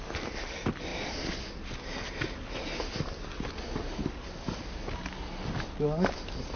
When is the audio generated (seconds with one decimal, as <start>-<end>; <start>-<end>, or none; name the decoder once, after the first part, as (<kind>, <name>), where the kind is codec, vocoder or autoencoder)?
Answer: none